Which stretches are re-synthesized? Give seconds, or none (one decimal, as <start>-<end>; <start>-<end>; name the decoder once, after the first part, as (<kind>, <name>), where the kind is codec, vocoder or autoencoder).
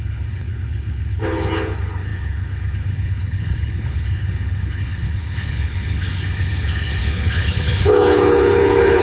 0.0-9.0 (codec, HILCodec)